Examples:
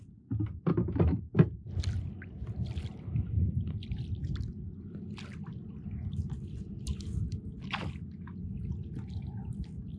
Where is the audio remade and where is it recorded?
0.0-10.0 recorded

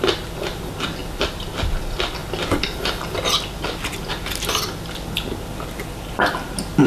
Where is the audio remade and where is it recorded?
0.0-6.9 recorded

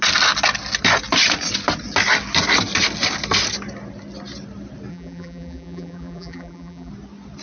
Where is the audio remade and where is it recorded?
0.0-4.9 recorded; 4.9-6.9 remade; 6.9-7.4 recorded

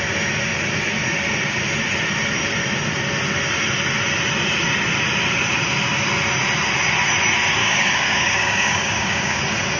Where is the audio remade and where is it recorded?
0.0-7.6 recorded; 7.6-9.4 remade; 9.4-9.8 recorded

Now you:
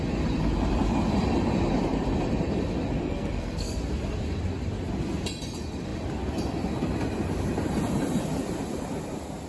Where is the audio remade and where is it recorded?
0.0-3.0 recorded; 3.0-3.8 remade; 3.8-9.5 recorded